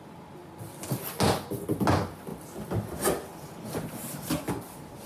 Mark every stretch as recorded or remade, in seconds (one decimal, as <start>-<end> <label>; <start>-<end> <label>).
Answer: 0.0-5.1 recorded